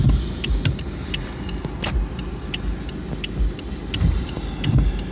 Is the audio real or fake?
real